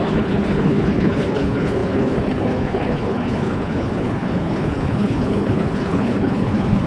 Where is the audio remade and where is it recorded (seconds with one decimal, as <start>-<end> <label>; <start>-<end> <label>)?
0.0-6.9 remade